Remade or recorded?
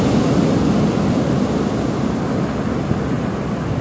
recorded